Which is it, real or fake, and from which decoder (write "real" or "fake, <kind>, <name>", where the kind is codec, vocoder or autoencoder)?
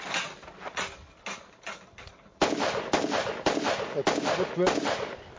real